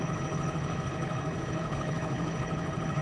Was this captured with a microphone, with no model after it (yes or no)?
no